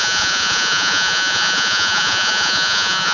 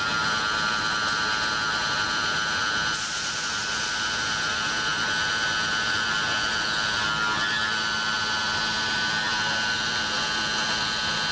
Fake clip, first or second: first